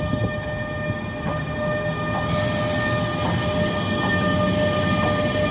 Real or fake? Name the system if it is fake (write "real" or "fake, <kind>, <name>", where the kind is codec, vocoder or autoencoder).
real